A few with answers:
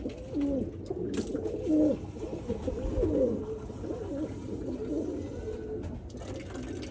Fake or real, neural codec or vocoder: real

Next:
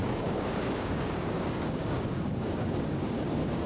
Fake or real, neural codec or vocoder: fake, codec, DAC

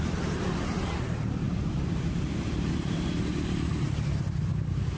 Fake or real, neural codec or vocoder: fake, vocoder, BigVGAN v2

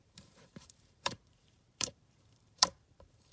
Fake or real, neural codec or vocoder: fake, vocoder, BigVGAN v2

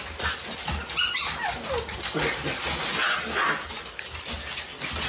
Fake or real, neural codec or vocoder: real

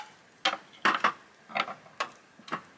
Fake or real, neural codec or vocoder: real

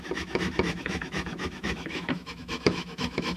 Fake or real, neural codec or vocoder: fake, autoencoder, DAC-VAE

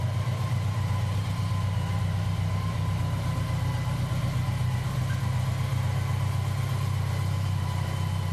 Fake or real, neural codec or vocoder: real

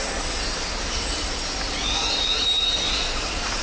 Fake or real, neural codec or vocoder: real